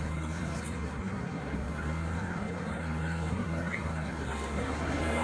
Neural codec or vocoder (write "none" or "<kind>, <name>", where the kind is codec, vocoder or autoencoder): codec, SNAC